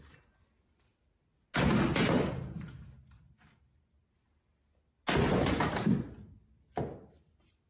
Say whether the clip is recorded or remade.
recorded